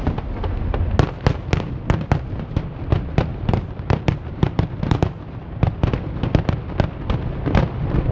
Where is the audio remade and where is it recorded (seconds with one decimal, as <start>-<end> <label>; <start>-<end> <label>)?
0.0-3.3 recorded; 3.3-5.7 remade; 5.7-8.1 recorded